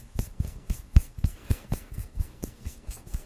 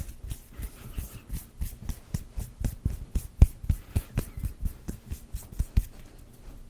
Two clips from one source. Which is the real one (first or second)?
second